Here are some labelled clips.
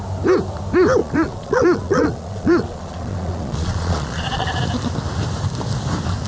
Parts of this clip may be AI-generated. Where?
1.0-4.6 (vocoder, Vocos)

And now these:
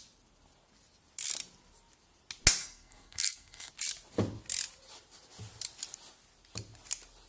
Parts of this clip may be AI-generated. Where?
2.6-3.7 (codec, SNAC)

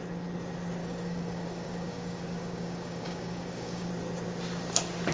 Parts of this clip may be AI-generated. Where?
0.8-3.9 (codec, DAC)

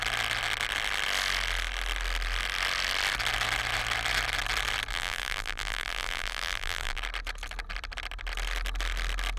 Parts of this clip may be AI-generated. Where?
4.9-7.0 (vocoder, BigVGAN v2)

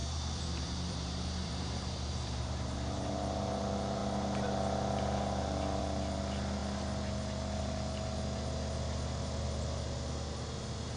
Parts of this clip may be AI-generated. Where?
0.0-3.1 (vocoder, BigVGAN v2)